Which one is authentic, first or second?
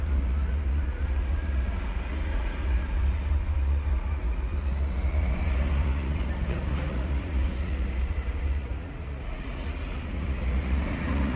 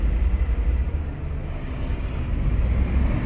second